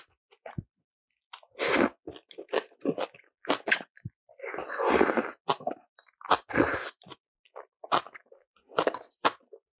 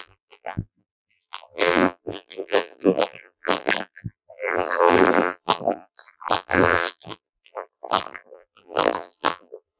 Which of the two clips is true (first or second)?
first